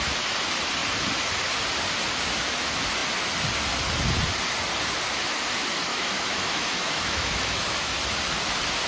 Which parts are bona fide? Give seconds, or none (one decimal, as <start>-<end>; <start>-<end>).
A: 0.0-5.9; 7.9-8.9